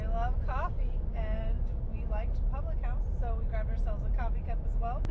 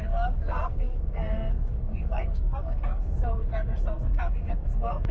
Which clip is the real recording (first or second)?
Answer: first